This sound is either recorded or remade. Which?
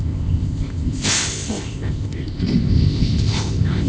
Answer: remade